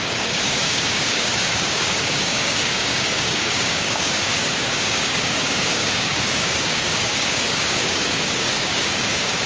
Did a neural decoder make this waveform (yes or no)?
yes